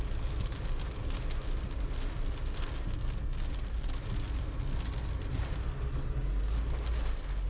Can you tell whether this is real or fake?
real